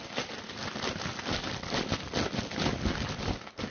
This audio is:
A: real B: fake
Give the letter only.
A